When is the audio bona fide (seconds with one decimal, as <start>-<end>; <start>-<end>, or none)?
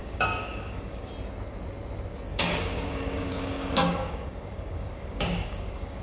1.1-2.3